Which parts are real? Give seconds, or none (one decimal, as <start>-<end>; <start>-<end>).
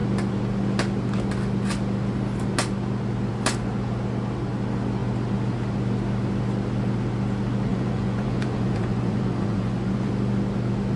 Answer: 0.0-7.7; 10.1-11.0